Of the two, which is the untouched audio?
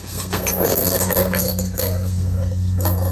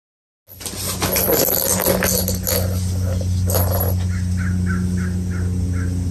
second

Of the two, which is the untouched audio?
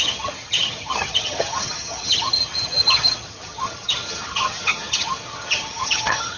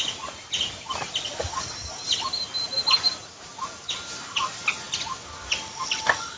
second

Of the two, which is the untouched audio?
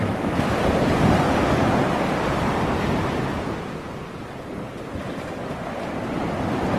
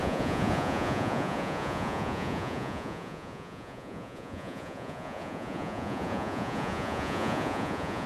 first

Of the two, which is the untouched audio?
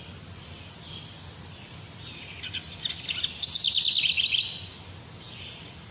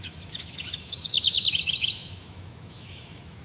first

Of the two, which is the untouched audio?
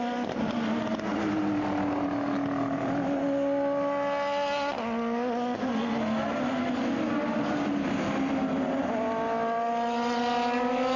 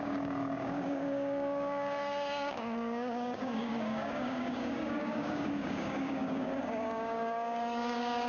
first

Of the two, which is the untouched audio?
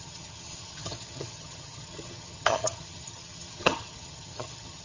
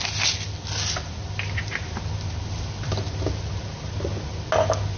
second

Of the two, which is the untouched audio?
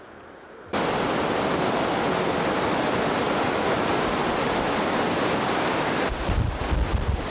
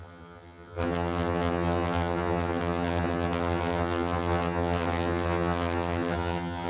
first